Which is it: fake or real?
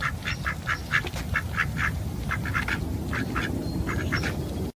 real